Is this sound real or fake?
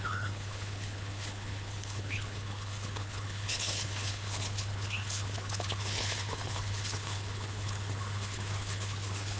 fake